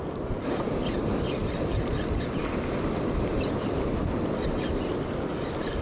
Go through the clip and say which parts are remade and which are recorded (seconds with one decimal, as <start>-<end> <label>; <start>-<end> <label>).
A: 0.0-5.8 recorded